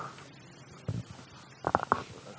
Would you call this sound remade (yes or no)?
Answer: no